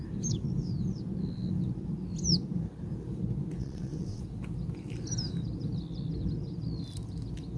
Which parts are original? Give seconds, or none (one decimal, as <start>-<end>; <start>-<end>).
0.0-3.6; 4.2-7.6